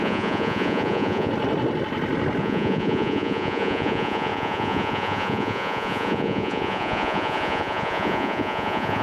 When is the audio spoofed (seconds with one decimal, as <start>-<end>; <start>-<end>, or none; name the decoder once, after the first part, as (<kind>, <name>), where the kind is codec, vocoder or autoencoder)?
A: 0.0-1.3 (vocoder, Vocos); 2.4-9.0